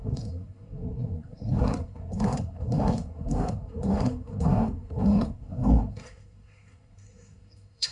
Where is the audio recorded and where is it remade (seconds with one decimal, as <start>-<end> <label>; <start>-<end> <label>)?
0.0-7.9 remade